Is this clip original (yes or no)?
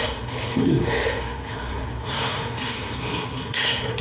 no